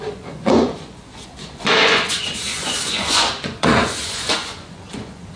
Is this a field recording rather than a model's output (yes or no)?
no